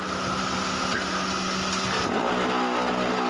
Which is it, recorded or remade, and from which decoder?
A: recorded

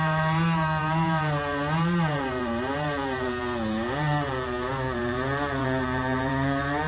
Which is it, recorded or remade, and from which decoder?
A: remade, vocoder, BigVGAN v2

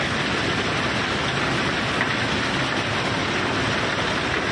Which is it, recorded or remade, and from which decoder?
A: recorded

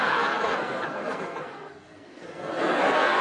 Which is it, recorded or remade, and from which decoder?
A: remade, codec, SNAC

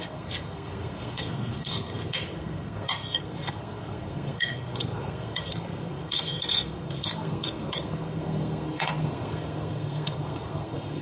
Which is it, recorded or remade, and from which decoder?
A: remade, codec, SNAC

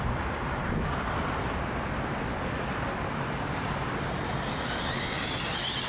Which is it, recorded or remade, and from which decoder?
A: recorded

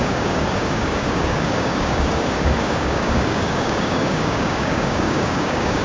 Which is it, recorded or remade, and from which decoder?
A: remade, codec, DAC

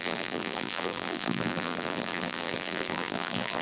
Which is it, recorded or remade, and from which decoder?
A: remade, vocoder, BigVGAN v2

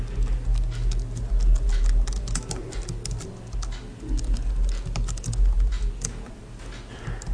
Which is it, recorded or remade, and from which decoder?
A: recorded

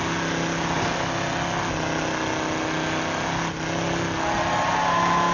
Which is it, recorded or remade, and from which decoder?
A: recorded